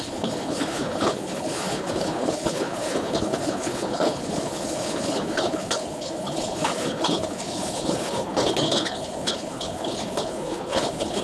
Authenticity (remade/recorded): remade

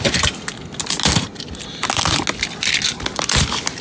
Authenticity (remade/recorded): recorded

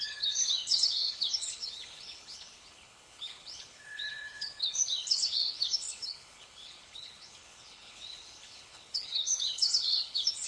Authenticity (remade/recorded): remade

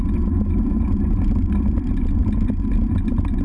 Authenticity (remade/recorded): recorded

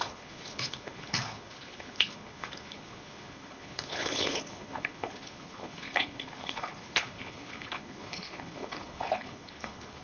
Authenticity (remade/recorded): remade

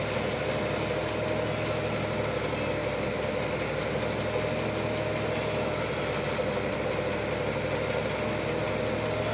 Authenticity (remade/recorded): recorded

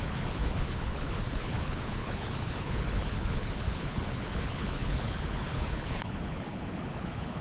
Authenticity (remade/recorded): remade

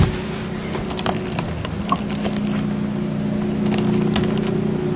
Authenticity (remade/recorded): recorded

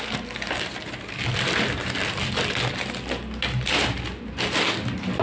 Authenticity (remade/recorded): recorded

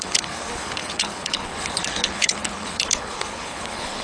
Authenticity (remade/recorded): remade